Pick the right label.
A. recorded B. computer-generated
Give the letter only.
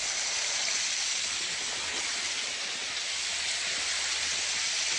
A